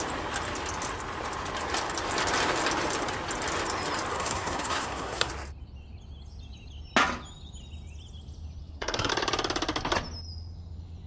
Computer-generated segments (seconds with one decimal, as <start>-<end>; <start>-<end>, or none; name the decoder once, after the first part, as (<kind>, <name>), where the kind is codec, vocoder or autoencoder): 4.1-5.3 (codec, SNAC); 8.6-9.1